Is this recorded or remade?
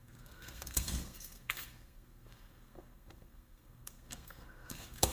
remade